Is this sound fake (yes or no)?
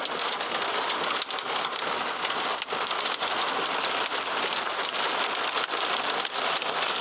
no